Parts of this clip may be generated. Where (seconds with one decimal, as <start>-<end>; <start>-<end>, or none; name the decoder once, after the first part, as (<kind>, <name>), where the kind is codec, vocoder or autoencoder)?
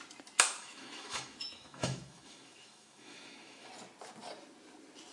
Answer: 0.6-3.7 (autoencoder, DAC-VAE)